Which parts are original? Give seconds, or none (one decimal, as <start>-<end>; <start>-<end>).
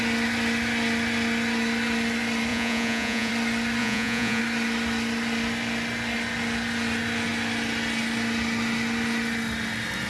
0.0-2.5; 3.3-3.8; 4.4-10.1